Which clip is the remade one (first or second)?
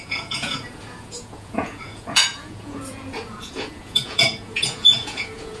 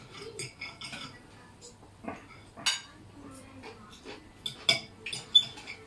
first